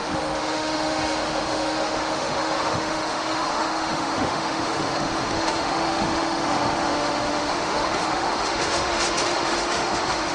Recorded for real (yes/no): no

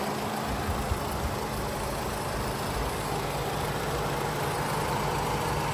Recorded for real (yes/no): no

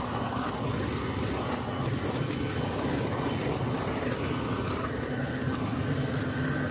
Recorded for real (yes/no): yes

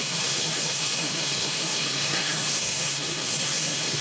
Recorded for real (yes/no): no